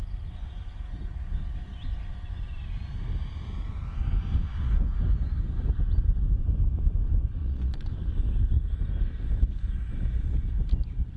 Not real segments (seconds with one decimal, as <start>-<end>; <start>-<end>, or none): 7.4-7.9